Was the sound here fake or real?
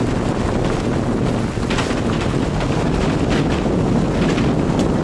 real